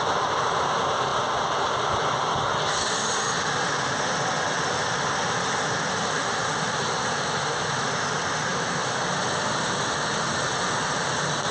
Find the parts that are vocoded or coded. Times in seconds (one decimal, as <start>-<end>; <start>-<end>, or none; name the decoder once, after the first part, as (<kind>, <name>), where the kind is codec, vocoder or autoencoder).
none